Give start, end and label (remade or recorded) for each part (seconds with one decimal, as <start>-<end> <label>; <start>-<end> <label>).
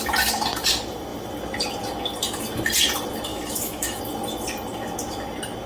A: 0.0-3.3 recorded; 3.3-4.0 remade; 4.0-5.7 recorded